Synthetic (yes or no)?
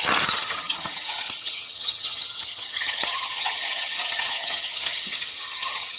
yes